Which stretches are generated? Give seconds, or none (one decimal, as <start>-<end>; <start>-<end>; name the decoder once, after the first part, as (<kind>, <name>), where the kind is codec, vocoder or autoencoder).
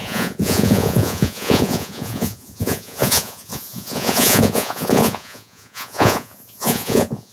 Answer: 0.0-7.3 (vocoder, Vocos)